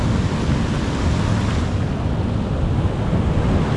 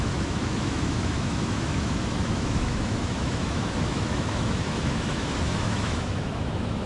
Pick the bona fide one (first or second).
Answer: first